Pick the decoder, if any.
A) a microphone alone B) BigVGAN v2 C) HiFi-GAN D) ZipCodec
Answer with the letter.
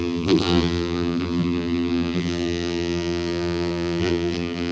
B